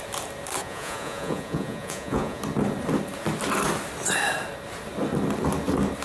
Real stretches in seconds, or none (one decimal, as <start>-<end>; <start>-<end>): 0.0-0.6; 2.4-6.0